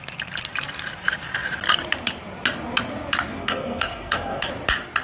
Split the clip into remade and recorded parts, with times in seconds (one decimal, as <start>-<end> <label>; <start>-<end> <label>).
0.0-3.4 recorded; 3.4-4.5 remade; 4.5-5.0 recorded